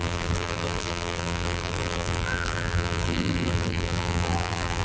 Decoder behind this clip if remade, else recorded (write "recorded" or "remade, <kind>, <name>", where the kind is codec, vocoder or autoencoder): remade, vocoder, BigVGAN v2